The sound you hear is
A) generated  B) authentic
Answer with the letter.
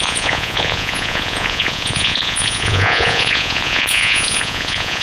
A